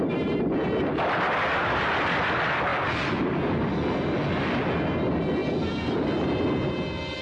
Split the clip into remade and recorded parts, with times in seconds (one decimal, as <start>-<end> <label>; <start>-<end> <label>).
0.0-7.2 recorded